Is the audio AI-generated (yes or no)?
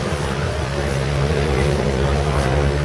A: yes